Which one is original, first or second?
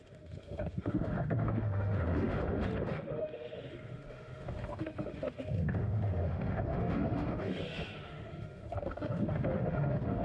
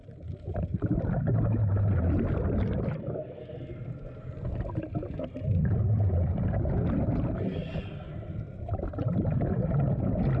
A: second